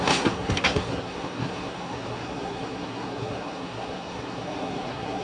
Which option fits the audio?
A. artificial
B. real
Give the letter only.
A